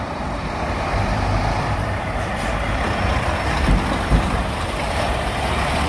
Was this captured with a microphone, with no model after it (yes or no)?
no